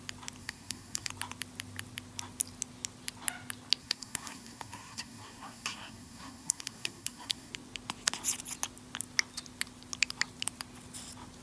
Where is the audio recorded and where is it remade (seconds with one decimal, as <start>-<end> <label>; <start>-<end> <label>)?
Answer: 0.0-0.4 recorded; 0.4-1.1 remade; 1.1-3.8 recorded; 3.8-7.5 remade; 7.5-11.4 recorded